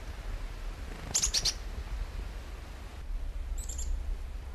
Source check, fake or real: real